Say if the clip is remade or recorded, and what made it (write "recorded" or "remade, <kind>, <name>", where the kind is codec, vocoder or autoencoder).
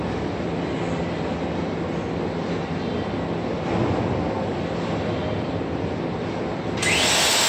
recorded